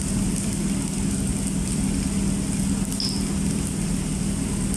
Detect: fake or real real